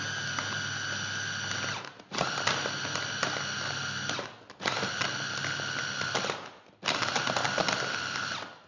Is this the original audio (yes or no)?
yes